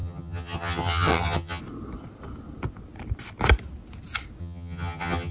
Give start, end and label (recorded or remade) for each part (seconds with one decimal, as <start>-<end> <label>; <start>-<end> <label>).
0.0-1.6 remade; 1.6-4.4 recorded; 4.4-5.3 remade